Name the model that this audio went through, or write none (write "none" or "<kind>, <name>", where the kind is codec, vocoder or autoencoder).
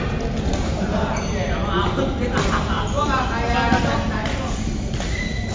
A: none